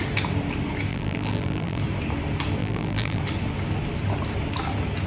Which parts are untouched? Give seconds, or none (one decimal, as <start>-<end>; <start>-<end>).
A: 0.0-0.9; 1.8-2.6; 3.2-5.1